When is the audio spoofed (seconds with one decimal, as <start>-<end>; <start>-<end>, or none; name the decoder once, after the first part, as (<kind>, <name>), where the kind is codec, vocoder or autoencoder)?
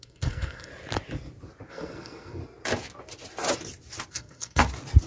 0.0-0.7 (codec, SNAC); 1.7-2.4; 4.1-4.6